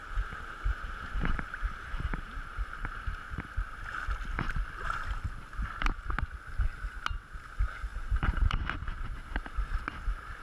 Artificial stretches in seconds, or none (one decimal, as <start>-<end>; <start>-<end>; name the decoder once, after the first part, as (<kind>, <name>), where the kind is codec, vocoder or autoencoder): 0.0-3.6 (vocoder, BigVGAN v2); 7.9-8.9